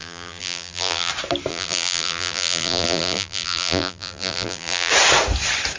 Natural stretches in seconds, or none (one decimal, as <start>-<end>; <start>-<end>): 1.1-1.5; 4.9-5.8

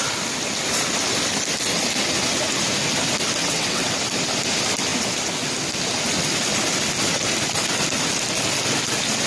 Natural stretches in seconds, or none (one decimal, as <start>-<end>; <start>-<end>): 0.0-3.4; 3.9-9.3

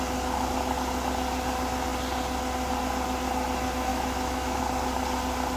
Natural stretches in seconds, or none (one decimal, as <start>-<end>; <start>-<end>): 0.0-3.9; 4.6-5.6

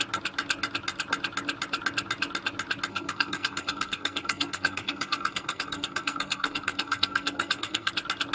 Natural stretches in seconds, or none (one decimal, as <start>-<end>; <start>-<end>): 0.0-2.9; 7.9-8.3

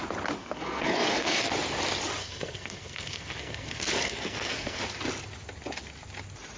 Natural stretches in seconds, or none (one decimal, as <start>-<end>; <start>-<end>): 0.0-0.4; 1.5-2.2; 4.8-6.6